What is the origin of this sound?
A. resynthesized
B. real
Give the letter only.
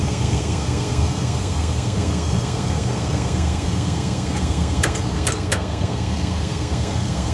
A